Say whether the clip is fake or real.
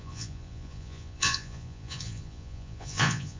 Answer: fake